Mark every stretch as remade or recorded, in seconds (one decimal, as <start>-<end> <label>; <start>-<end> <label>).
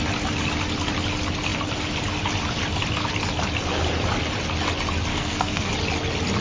0.0-5.1 recorded; 5.1-5.7 remade; 5.7-6.4 recorded